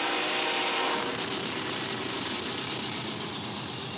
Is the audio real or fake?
fake